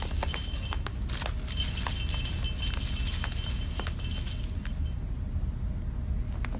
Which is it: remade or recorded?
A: recorded